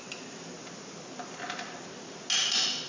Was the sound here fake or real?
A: real